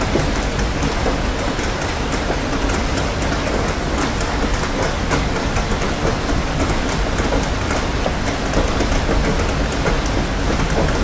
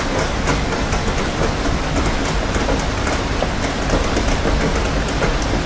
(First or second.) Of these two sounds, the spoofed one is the first